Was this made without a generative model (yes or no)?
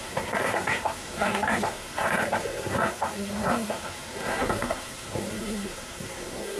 no